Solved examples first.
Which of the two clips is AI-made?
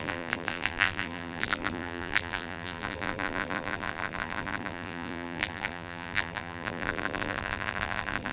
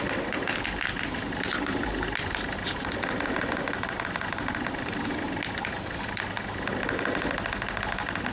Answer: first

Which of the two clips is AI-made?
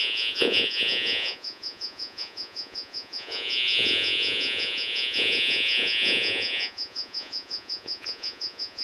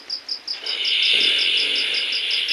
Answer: first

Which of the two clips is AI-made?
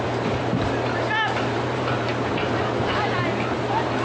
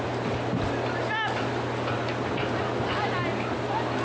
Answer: first